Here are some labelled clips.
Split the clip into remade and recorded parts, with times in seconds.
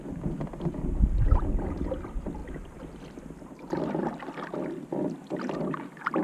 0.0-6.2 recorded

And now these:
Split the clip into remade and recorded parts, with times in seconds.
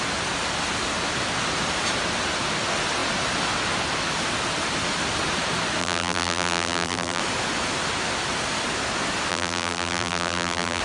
0.0-5.8 recorded; 5.8-7.2 remade; 7.2-9.3 recorded; 9.3-10.8 remade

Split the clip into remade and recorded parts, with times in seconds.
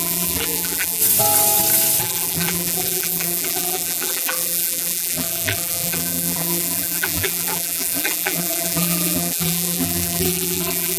0.0-1.0 remade; 1.0-2.0 recorded; 2.0-11.0 remade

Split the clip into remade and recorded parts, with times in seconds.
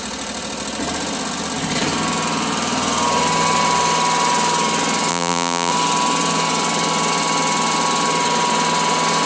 0.0-5.1 recorded; 5.1-5.7 remade; 5.7-9.3 recorded